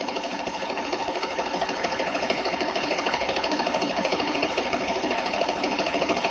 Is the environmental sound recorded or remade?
remade